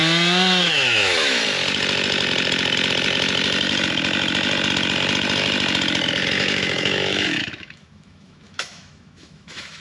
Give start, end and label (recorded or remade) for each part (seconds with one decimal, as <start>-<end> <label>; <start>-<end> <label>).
0.0-0.6 recorded; 0.6-1.4 remade; 1.4-6.3 recorded; 6.3-9.8 remade